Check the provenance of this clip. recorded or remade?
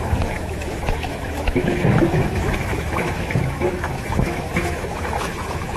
remade